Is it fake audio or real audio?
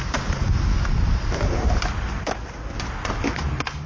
real